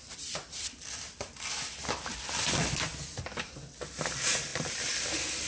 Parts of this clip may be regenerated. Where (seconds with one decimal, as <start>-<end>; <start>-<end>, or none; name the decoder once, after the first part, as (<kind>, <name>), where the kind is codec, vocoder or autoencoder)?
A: none